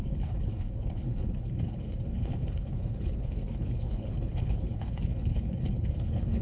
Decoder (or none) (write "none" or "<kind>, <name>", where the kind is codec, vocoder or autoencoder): codec, HILCodec